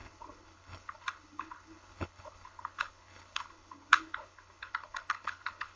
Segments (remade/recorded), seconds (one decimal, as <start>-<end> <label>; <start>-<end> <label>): 0.0-5.8 remade